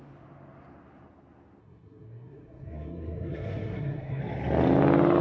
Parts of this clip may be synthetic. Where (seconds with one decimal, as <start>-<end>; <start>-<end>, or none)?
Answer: 1.6-4.2